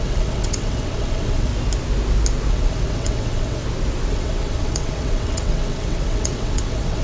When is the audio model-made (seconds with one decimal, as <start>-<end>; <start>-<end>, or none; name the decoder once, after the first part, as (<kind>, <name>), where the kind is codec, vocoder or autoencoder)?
0.0-1.5 (vocoder, WaveNeXt); 2.5-3.6; 4.1-7.0